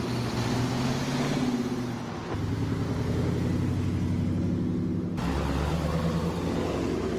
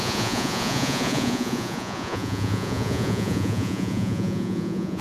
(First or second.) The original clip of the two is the first